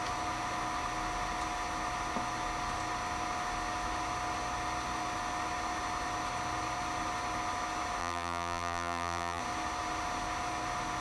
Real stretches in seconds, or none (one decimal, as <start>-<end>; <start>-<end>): 0.0-8.0; 9.4-11.0